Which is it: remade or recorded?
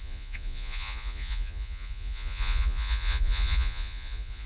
remade